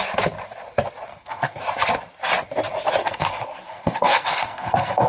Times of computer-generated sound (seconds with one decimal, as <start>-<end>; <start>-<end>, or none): 1.1-1.6; 3.0-5.1